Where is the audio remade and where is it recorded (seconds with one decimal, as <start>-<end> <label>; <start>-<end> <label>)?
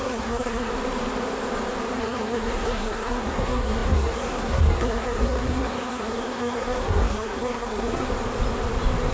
0.0-0.7 remade; 0.7-2.0 recorded; 2.0-8.1 remade; 8.1-9.1 recorded